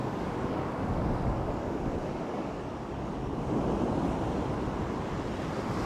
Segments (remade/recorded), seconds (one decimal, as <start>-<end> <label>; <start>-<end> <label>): 0.0-3.5 remade; 3.5-5.9 recorded